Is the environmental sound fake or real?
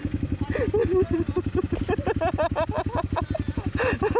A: real